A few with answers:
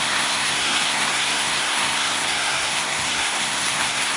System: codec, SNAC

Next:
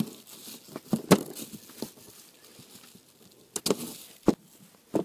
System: none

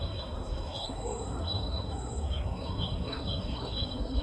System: codec, SNAC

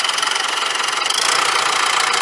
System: none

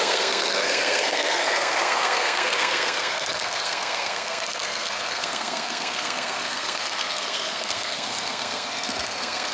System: codec, SNAC